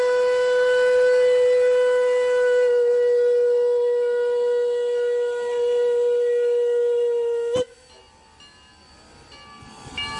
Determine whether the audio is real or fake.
real